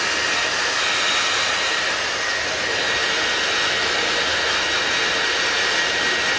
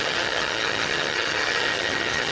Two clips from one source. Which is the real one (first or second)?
first